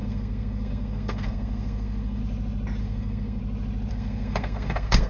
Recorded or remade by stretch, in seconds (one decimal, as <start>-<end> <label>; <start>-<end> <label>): 0.0-2.2 remade; 2.2-2.8 recorded; 2.8-3.4 remade; 3.4-3.9 recorded; 3.9-5.1 remade